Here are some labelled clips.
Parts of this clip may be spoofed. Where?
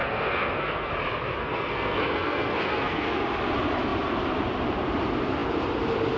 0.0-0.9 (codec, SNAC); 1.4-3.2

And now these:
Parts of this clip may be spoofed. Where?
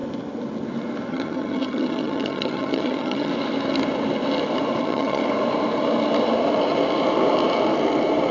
1.1-3.3 (vocoder, HiFi-GAN); 4.8-5.2